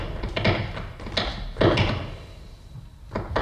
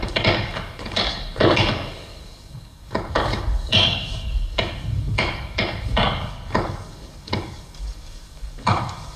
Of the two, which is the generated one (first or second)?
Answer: second